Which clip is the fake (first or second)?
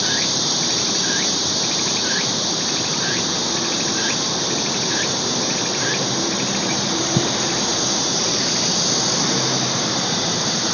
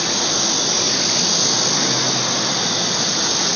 first